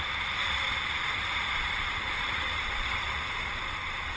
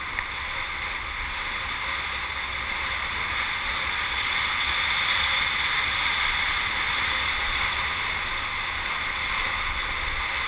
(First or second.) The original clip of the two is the second